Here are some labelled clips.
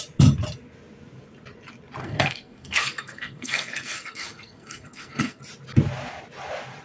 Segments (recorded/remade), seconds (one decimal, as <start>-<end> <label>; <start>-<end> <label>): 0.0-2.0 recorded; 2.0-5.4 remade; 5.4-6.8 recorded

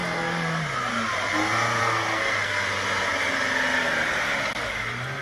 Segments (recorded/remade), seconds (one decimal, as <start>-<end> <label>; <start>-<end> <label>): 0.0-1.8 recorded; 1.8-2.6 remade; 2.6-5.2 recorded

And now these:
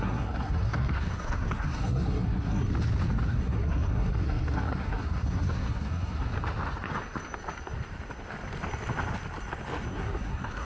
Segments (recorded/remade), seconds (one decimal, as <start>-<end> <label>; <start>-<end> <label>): 0.0-2.7 remade; 2.7-3.3 recorded; 3.3-6.3 remade; 6.3-9.9 recorded; 9.9-10.7 remade

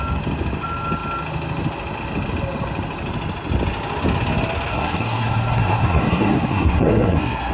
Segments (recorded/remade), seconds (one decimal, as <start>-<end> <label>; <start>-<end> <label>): 0.0-4.7 recorded; 4.7-7.5 remade